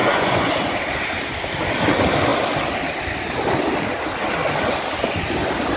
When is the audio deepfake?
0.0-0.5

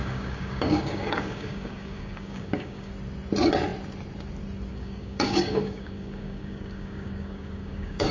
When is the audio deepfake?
0.0-2.9; 4.7-8.1

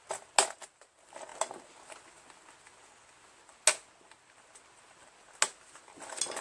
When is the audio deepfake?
none

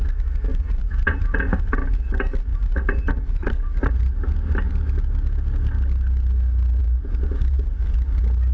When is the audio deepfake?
0.5-1.1; 6.8-7.9

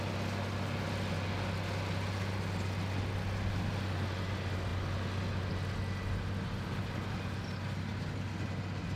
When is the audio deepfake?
none

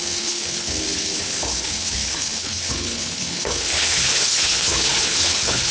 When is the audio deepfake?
0.0-5.7

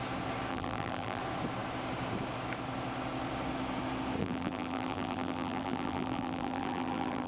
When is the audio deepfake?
0.5-1.2; 4.2-7.3